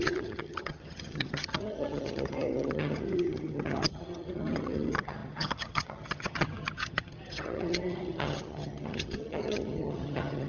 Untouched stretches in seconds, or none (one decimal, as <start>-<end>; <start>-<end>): none